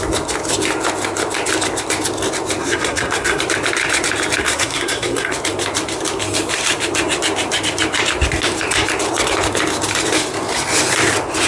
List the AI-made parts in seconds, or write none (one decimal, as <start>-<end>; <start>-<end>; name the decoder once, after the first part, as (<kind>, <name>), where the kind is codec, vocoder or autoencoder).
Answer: 2.6-3.4 (codec, SNAC); 4.4-5.3